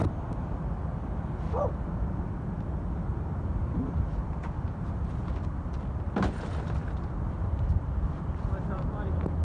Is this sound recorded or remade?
recorded